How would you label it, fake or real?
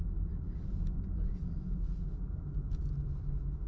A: real